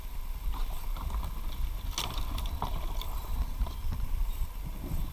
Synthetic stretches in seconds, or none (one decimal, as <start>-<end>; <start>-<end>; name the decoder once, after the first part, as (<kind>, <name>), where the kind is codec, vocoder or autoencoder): 3.2-4.4 (vocoder, BigVGAN v2)